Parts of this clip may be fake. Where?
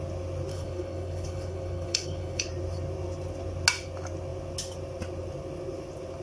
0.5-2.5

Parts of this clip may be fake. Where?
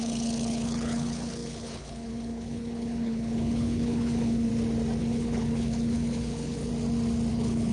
0.0-4.5; 5.0-6.7; 7.3-7.7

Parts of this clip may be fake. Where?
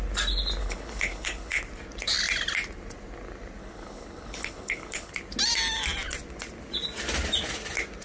0.6-1.6; 3.6-5.1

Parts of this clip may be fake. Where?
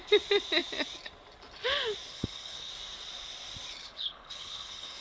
2.1-2.7; 3.8-5.0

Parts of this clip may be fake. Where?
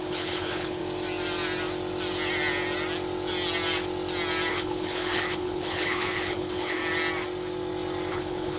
0.0-0.8; 4.5-6.8; 8.1-8.6